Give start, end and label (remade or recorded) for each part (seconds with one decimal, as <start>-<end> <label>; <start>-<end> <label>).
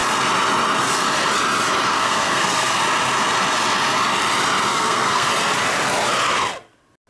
0.0-1.9 recorded; 1.9-2.8 remade; 2.8-4.7 recorded; 4.7-5.3 remade; 5.3-7.1 recorded